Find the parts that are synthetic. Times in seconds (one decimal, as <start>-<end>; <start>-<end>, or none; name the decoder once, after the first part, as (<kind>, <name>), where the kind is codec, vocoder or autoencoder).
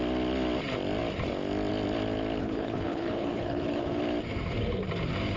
2.4-4.0 (codec, HILCodec)